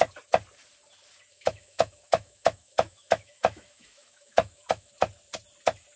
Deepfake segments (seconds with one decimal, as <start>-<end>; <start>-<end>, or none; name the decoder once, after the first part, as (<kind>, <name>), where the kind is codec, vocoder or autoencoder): 1.3-4.9 (autoencoder, DAC-VAE)